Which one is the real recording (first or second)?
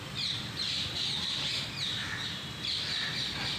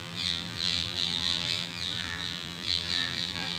first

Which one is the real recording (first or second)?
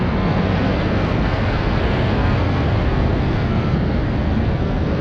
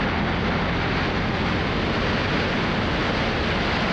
second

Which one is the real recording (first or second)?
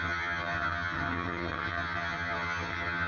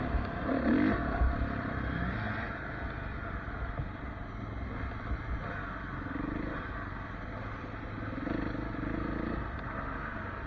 second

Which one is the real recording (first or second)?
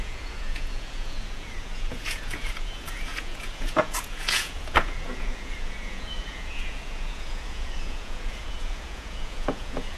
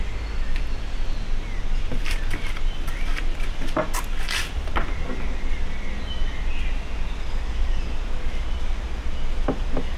second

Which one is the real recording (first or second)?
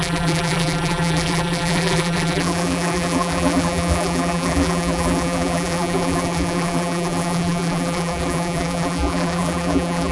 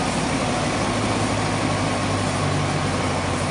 second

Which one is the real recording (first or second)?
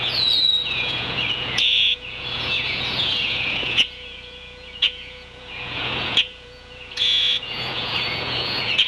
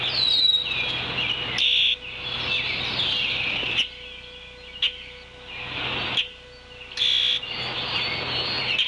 second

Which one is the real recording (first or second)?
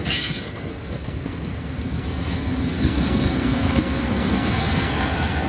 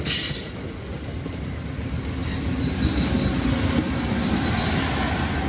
second